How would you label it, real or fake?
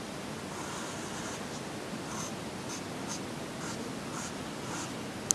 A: real